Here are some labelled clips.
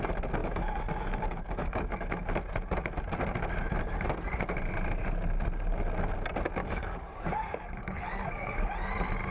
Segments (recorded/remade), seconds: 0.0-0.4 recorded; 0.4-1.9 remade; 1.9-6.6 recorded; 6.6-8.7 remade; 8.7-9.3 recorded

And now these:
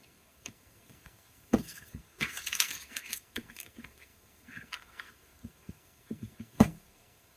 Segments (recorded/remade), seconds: 0.0-7.4 remade